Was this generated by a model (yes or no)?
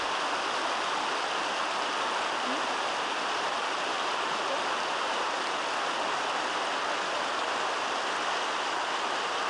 no